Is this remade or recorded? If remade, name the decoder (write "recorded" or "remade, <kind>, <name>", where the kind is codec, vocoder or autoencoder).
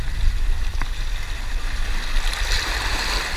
recorded